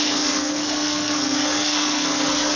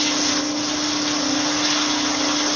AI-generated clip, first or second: first